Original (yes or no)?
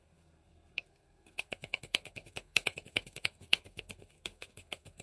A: no